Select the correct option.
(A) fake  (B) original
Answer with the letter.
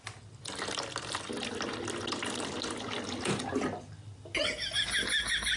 B